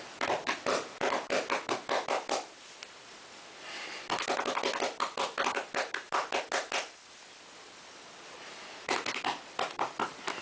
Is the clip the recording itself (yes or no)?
yes